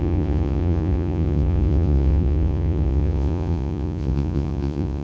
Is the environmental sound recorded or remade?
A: remade